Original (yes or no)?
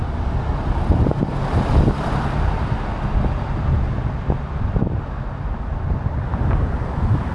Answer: yes